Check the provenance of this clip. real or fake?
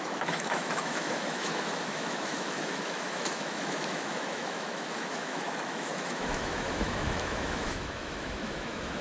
fake